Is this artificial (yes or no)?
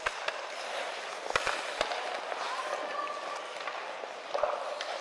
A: no